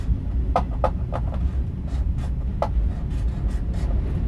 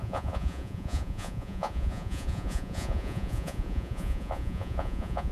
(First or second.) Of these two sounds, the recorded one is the first